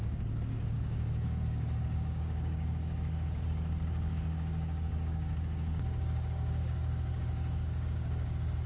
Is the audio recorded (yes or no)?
no